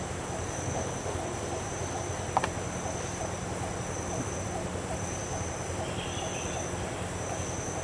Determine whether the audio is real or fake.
real